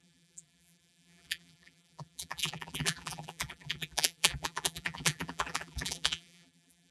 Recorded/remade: remade